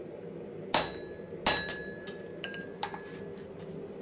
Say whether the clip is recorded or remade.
recorded